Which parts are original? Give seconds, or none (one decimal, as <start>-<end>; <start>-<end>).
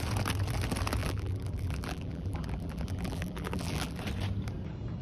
0.0-1.0; 4.0-5.0